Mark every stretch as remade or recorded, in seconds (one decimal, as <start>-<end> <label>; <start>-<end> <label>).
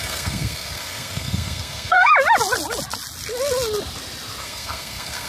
0.0-2.1 remade; 2.1-4.4 recorded; 4.4-5.3 remade